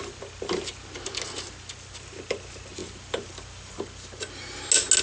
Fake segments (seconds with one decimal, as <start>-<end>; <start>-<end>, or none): none